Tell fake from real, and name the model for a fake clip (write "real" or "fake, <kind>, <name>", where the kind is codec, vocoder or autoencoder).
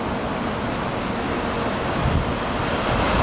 real